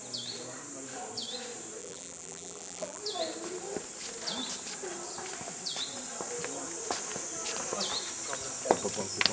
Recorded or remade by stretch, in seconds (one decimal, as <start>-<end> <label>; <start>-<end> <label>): 0.0-1.8 recorded; 1.8-3.0 remade; 3.0-9.3 recorded